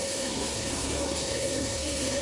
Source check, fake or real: fake